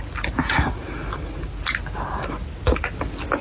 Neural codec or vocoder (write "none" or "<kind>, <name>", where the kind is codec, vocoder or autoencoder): none